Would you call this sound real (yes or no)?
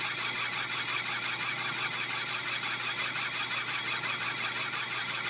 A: yes